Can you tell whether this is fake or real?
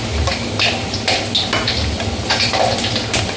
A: real